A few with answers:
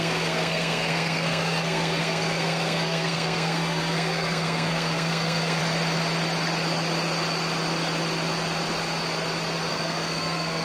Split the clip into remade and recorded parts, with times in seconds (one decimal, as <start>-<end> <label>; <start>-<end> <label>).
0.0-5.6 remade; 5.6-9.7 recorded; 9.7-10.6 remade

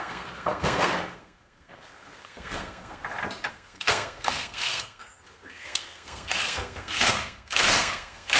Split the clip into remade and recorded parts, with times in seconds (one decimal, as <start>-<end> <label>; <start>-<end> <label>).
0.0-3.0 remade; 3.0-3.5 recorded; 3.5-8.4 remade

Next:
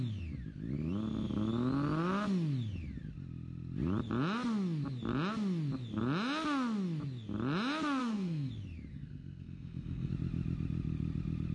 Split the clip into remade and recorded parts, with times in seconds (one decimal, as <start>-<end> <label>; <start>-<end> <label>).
0.0-8.0 recorded; 8.0-8.5 remade; 8.5-8.9 recorded; 8.9-10.1 remade; 10.1-11.5 recorded

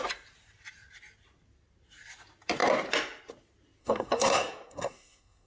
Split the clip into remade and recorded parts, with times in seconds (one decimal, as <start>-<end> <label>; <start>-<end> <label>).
0.0-3.8 recorded; 3.8-5.5 remade

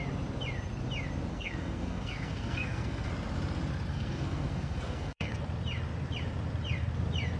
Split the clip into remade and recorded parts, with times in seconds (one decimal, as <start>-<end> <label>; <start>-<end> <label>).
0.0-1.3 recorded; 1.3-3.1 remade; 3.1-3.9 recorded; 3.9-5.4 remade; 5.4-7.4 recorded

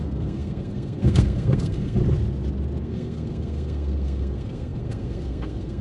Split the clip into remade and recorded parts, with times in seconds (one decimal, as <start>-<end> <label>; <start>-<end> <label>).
0.0-2.0 remade; 2.0-2.8 recorded; 2.8-5.8 remade

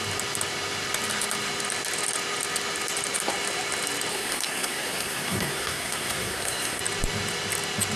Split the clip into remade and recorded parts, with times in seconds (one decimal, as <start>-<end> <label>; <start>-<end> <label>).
0.0-4.1 recorded; 4.1-6.8 remade; 6.8-8.0 recorded

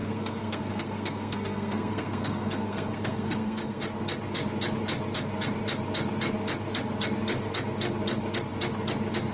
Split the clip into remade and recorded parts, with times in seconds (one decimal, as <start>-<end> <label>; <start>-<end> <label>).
0.0-3.8 remade; 3.8-9.3 recorded